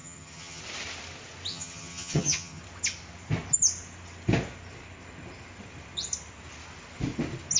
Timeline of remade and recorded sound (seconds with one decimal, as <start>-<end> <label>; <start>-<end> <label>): 0.0-0.6 remade; 0.6-1.5 recorded; 1.5-2.6 remade; 2.6-7.6 recorded